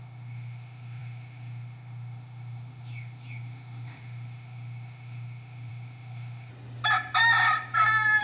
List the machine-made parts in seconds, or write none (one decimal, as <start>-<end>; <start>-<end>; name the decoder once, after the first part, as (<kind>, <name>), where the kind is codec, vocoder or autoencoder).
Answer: 0.0-6.5 (autoencoder, DAC-VAE)

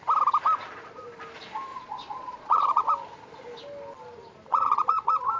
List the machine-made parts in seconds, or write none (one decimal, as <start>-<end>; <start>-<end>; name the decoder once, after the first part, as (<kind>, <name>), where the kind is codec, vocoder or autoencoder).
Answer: 1.7-2.9 (vocoder, Vocos); 4.5-5.4

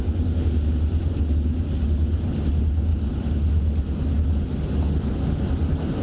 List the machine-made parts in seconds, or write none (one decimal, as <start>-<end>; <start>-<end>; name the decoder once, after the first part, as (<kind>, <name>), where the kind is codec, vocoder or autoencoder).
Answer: none

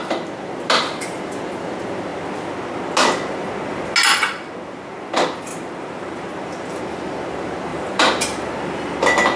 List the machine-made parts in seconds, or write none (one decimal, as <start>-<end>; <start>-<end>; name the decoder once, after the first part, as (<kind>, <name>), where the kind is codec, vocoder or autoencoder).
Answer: 5.5-6.8 (vocoder, BigVGAN v2); 7.7-8.5

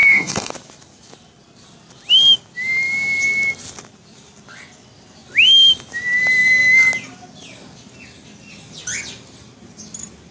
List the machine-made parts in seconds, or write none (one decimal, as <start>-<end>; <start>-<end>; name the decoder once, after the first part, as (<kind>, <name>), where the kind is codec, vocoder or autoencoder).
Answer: 0.0-0.5 (codec, DAC)